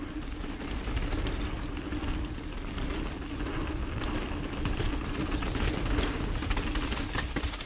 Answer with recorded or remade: recorded